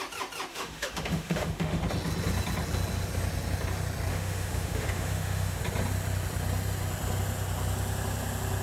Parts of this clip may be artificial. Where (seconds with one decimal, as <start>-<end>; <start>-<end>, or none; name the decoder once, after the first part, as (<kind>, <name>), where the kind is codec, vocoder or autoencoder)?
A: 0.5-1.8 (autoencoder, DAC-VAE); 4.1-5.6